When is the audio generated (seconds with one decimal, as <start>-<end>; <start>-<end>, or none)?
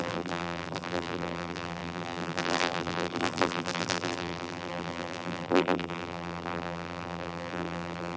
0.0-8.2